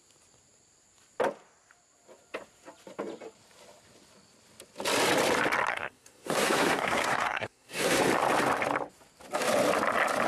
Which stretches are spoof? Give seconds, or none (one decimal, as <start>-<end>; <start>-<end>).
5.7-8.0